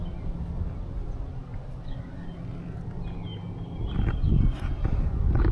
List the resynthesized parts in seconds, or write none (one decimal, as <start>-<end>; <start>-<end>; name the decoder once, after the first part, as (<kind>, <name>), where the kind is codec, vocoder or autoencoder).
none

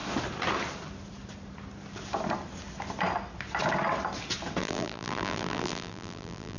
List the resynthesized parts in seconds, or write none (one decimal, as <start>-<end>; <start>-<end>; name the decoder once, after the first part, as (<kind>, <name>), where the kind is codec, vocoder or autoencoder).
4.6-6.6 (vocoder, BigVGAN v2)

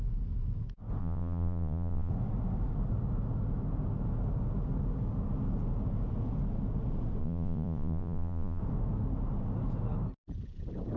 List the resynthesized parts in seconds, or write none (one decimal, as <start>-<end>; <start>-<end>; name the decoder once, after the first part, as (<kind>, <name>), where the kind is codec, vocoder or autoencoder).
1.0-2.1 (vocoder, Vocos); 7.2-8.6

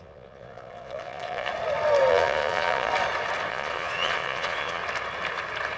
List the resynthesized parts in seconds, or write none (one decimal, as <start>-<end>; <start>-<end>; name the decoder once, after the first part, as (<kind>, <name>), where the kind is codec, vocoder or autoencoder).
0.0-1.5 (vocoder, Vocos); 2.1-2.9; 3.5-4.8

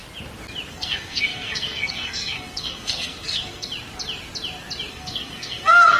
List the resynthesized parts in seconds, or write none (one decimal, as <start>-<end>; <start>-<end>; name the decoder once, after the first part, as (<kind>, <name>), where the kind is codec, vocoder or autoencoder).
0.7-3.7 (codec, SNAC); 4.9-6.0

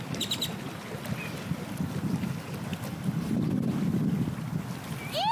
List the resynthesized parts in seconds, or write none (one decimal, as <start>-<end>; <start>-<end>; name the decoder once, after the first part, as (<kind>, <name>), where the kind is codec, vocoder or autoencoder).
2.7-3.8 (vocoder, BigVGAN v2)